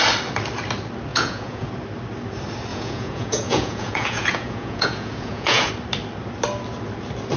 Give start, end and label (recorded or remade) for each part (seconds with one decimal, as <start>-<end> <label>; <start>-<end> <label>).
0.0-1.1 recorded; 1.1-1.7 remade; 1.7-2.7 recorded; 2.7-5.7 remade; 5.7-7.4 recorded